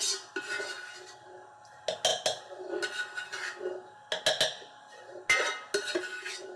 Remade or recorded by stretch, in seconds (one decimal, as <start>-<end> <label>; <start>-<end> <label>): 0.0-6.6 recorded